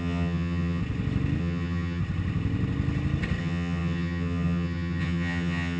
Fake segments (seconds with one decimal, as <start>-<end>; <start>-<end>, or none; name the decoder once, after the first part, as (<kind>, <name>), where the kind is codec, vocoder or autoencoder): 0.0-0.8 (vocoder, HiFi-GAN); 1.4-2.0; 3.4-5.8